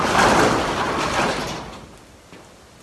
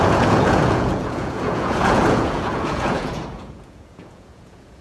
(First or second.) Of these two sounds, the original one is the first